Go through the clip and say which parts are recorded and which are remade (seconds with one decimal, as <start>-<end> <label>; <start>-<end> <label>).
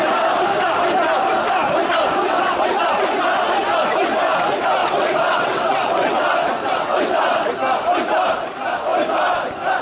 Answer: 0.0-2.2 recorded; 2.2-2.8 remade; 2.8-4.8 recorded; 4.8-7.5 remade; 7.5-9.8 recorded